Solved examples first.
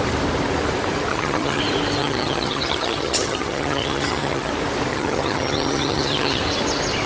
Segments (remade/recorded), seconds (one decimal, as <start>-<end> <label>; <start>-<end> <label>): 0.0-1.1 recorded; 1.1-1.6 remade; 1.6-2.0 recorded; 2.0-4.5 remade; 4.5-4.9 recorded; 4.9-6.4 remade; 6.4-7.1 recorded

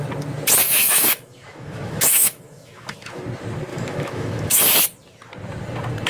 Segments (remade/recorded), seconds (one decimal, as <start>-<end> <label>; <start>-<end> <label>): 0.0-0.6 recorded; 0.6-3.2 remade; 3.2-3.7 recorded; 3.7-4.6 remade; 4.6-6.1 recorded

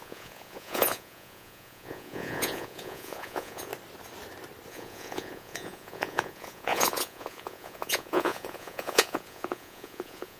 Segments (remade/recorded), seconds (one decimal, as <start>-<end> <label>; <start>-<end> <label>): 0.0-3.7 remade; 3.7-4.7 recorded; 4.7-10.4 remade

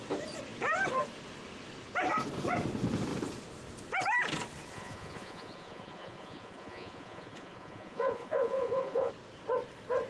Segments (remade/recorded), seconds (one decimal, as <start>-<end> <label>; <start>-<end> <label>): 0.0-4.7 recorded; 4.7-9.1 remade; 9.1-10.1 recorded